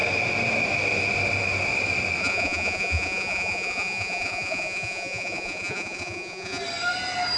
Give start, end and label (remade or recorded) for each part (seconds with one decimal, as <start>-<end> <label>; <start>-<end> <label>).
0.0-2.2 recorded; 2.2-6.6 remade; 6.6-7.4 recorded